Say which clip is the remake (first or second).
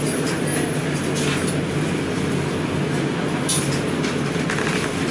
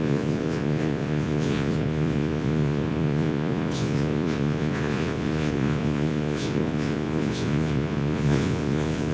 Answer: second